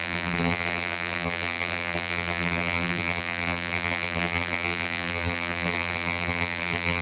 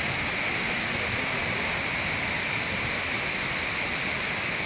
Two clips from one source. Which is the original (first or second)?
second